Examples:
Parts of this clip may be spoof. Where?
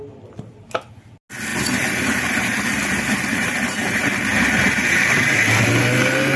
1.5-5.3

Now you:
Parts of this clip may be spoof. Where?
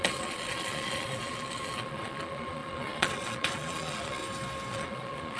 0.0-4.2; 4.7-5.4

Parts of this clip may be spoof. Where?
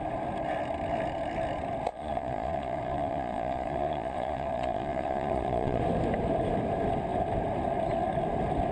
1.9-5.8